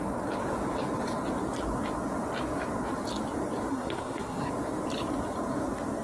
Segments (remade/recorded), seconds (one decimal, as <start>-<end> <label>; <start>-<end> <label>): 0.0-3.7 recorded; 3.7-4.5 remade; 4.5-6.0 recorded